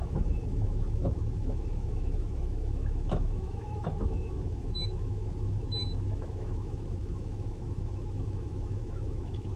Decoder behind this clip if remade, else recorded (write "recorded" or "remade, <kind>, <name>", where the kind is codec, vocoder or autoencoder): remade, autoencoder, DAC-VAE